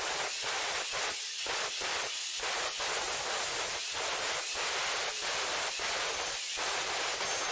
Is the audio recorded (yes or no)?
yes